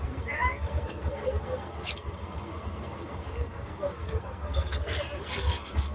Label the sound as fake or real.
fake